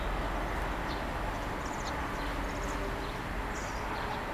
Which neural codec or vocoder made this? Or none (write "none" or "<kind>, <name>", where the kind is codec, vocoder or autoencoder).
none